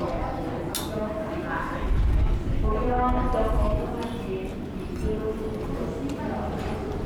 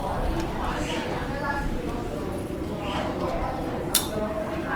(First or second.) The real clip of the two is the first